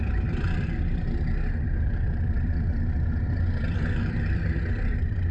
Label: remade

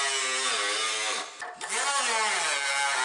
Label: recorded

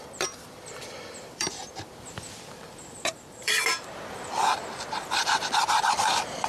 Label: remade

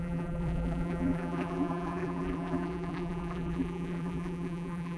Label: remade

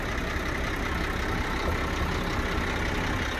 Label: recorded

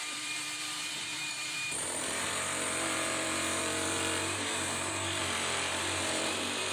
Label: remade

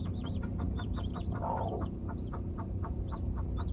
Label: remade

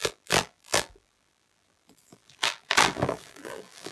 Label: remade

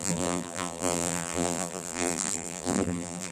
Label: remade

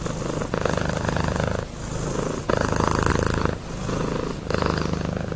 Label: recorded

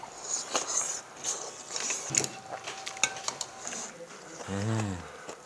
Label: recorded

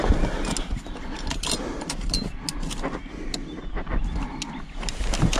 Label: recorded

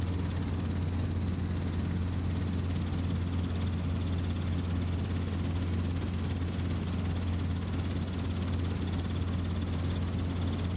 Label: recorded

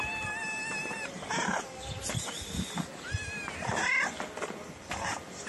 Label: recorded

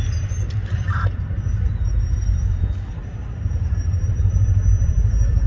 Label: remade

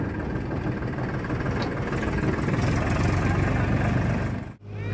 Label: recorded